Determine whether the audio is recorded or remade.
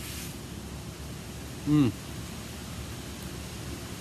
recorded